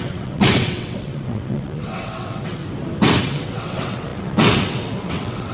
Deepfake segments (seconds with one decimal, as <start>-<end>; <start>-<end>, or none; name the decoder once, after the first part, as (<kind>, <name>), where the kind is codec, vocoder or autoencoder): 0.0-2.6 (vocoder, WaveNeXt); 3.2-5.5